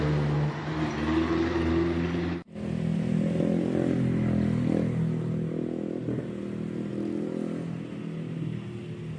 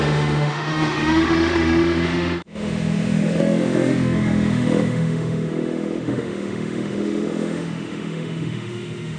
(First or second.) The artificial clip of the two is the second